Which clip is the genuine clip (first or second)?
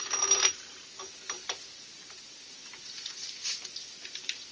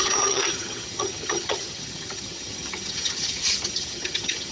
first